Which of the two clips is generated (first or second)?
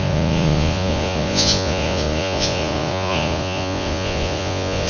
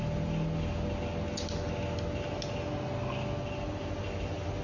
first